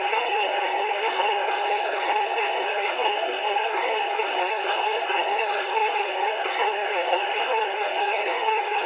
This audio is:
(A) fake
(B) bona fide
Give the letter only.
A